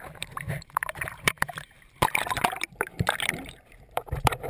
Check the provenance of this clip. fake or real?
fake